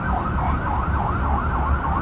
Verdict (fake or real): real